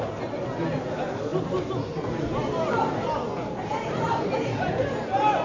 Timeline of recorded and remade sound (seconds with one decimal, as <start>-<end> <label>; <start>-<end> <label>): 0.0-5.4 recorded